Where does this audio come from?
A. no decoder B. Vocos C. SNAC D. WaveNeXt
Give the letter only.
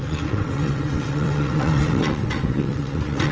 D